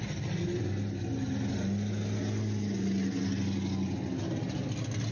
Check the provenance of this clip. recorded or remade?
recorded